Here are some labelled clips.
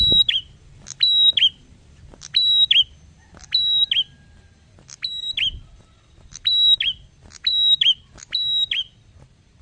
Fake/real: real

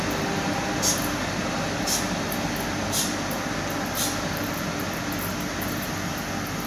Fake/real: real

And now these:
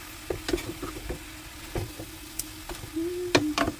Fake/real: real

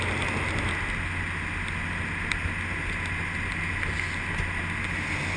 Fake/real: real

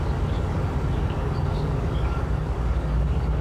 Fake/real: fake